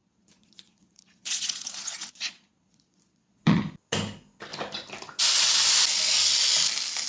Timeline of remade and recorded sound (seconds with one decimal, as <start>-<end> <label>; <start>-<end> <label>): 0.0-3.6 remade; 3.6-7.1 recorded